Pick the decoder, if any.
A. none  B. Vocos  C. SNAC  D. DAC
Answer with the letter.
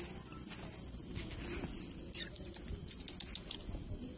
A